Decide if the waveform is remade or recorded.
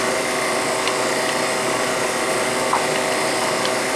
recorded